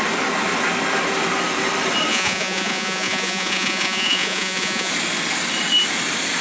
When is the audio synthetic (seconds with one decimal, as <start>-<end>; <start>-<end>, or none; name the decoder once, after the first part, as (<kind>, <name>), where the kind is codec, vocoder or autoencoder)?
2.1-4.9 (vocoder, Vocos)